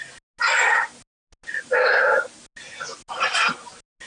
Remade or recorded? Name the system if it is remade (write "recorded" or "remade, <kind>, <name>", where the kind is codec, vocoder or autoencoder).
recorded